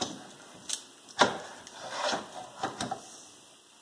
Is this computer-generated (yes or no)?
no